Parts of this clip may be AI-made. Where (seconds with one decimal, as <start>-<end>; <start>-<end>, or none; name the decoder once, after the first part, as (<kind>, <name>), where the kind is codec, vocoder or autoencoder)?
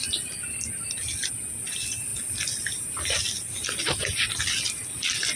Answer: none